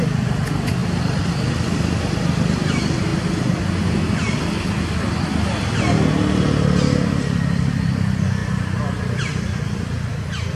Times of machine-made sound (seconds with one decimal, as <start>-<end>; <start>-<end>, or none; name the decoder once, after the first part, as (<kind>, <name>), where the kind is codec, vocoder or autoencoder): 0.0-0.8 (vocoder, BigVGAN v2); 1.3-3.1; 7.7-8.4